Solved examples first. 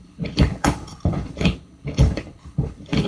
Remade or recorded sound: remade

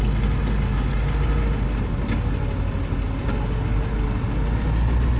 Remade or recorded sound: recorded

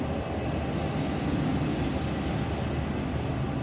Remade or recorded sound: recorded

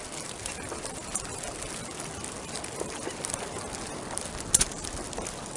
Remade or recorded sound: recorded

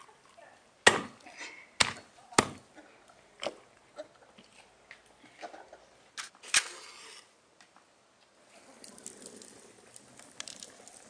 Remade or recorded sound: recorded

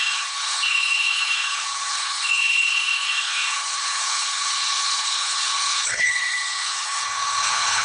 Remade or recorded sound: remade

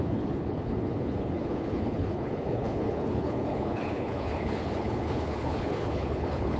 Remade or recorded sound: remade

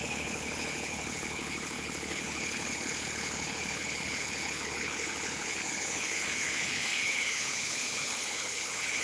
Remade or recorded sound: remade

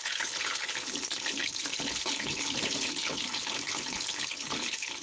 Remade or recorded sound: remade